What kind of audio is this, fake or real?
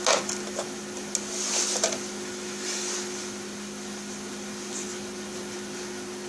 real